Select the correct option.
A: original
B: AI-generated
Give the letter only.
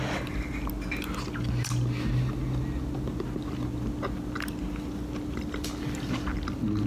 A